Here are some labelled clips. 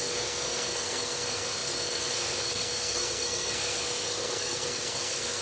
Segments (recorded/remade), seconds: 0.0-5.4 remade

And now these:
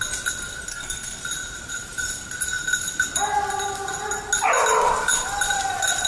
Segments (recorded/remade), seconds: 0.0-0.7 recorded; 0.7-1.2 remade; 1.2-6.1 recorded

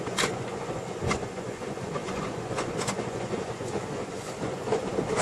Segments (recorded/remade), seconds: 0.0-5.2 remade

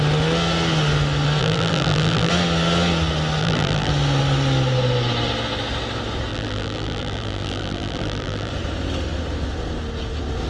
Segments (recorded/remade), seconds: 0.0-1.4 recorded; 1.4-2.3 remade; 2.3-3.4 recorded; 3.4-3.9 remade; 3.9-6.3 recorded; 6.3-8.5 remade; 8.5-10.5 recorded

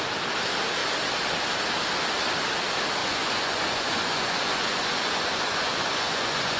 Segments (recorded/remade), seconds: 0.0-3.0 recorded; 3.0-6.6 remade